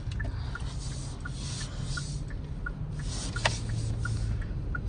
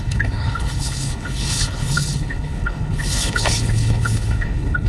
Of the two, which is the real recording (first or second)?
first